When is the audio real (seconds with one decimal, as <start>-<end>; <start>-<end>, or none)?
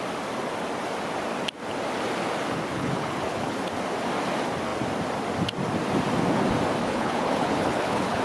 0.0-2.7; 3.6-6.8